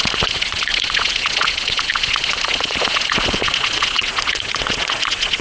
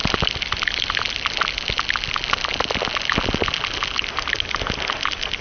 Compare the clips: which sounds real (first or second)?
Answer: second